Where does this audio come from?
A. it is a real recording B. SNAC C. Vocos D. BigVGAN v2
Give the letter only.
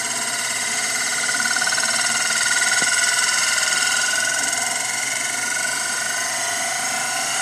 D